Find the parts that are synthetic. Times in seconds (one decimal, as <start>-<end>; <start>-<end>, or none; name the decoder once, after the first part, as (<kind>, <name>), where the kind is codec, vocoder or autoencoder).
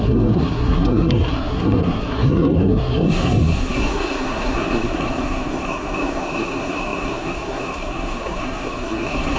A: 0.0-9.4 (codec, SNAC)